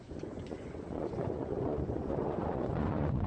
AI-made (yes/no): yes